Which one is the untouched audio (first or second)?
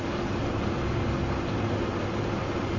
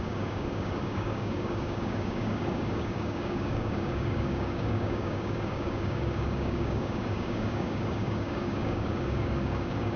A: first